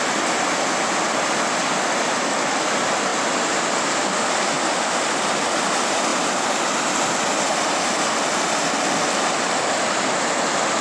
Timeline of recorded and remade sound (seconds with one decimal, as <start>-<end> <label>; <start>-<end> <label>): 0.0-10.8 recorded